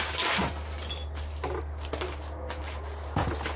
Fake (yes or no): no